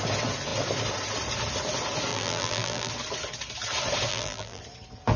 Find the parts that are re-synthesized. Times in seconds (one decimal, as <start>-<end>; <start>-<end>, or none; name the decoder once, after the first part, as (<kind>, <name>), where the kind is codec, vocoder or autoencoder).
2.1-2.9 (vocoder, BigVGAN v2); 4.1-4.6